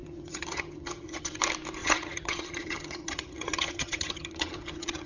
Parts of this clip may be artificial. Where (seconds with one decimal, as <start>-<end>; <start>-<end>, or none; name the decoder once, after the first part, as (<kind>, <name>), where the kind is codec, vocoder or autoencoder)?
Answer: 0.0-1.4 (vocoder, HiFi-GAN); 1.8-5.1